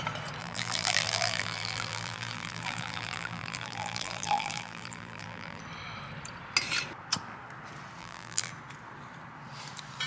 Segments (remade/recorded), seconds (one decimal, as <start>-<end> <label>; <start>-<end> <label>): 0.0-0.4 recorded; 0.4-5.6 remade; 5.6-8.0 recorded; 8.0-8.5 remade; 8.5-10.1 recorded